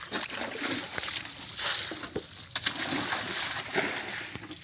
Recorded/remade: recorded